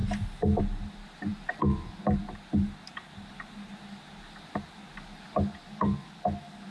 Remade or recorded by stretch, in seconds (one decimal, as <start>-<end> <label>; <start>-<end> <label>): 0.0-6.7 recorded